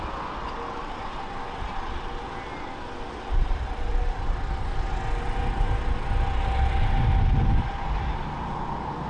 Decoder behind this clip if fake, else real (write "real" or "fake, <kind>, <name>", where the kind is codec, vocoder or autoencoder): real